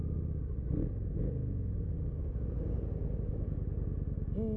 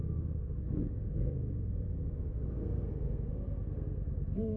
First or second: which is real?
first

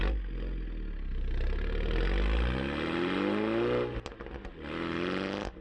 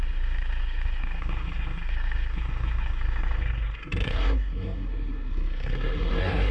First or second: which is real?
first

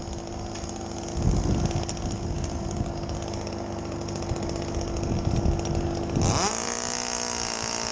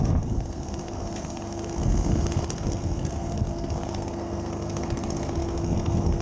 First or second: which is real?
first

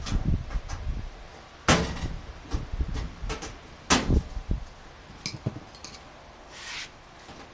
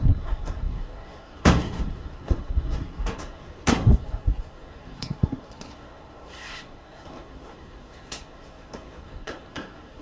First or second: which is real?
first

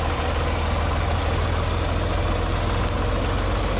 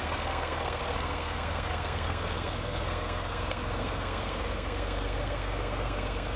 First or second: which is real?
first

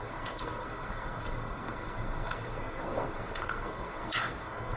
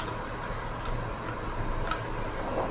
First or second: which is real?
second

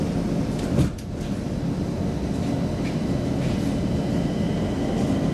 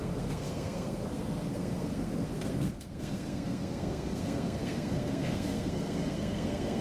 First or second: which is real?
first